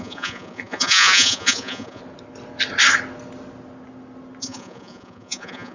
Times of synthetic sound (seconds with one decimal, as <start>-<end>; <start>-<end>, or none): 0.0-2.0; 4.4-5.7